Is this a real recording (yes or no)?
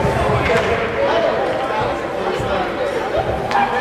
yes